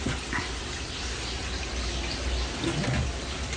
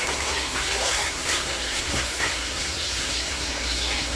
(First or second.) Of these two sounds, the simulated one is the second